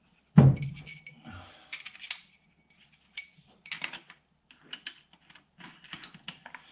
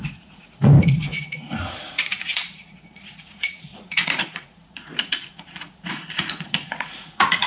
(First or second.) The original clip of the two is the first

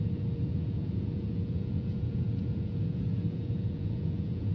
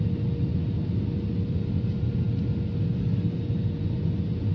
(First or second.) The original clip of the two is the second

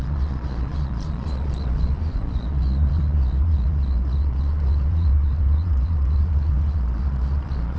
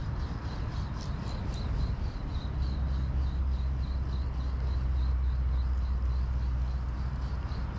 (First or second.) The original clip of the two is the second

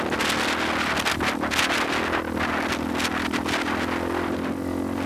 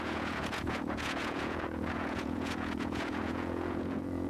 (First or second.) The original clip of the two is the first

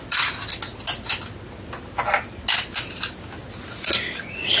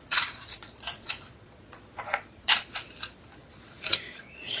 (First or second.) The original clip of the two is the first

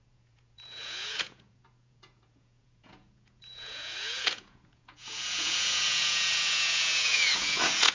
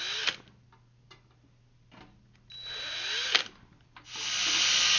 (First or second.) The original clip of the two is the second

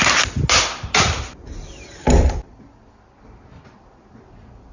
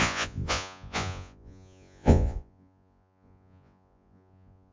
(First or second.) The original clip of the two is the first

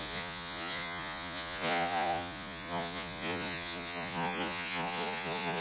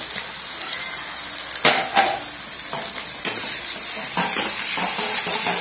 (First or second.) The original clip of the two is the second